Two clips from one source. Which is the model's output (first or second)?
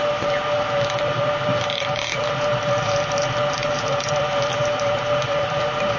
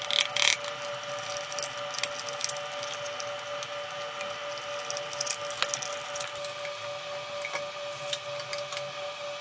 first